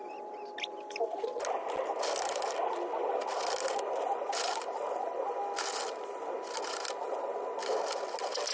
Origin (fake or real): real